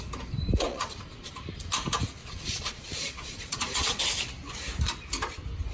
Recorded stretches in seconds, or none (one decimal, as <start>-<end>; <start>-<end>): 0.0-0.7; 1.3-2.2; 4.0-5.7